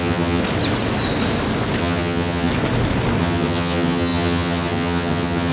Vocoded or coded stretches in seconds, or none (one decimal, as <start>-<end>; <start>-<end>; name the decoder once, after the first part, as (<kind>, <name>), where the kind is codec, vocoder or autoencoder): 0.0-0.4 (vocoder, HiFi-GAN); 1.8-2.5; 3.2-5.5